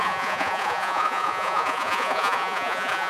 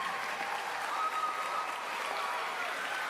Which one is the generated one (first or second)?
first